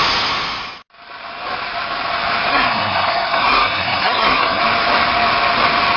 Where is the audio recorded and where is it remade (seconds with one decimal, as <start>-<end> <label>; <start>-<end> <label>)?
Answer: 0.0-2.5 recorded; 2.5-4.6 remade; 4.6-6.0 recorded